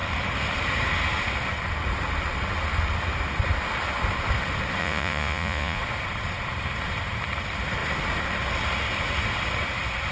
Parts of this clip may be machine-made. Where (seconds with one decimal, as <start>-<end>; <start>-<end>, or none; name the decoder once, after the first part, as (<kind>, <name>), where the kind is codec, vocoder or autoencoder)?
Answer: 4.8-5.8 (vocoder, Vocos)